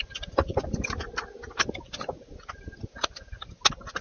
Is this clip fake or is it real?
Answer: real